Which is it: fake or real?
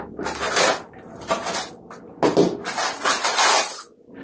real